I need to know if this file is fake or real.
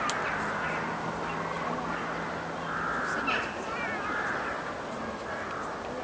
real